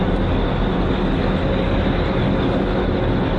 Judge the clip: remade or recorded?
recorded